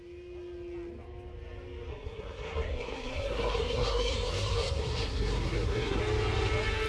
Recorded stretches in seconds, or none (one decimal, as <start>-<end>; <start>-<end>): 0.0-1.9; 6.0-6.9